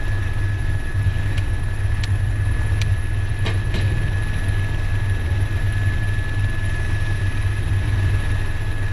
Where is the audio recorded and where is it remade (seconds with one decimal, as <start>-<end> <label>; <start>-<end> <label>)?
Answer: 0.0-8.9 recorded